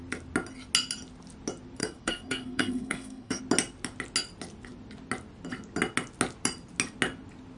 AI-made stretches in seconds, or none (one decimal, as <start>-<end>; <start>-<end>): 1.8-3.4